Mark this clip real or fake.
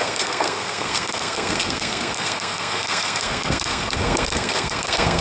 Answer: fake